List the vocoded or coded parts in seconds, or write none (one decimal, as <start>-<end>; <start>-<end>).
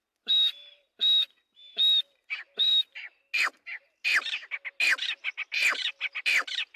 none